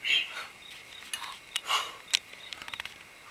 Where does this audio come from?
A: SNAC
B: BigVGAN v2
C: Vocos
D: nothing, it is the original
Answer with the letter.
D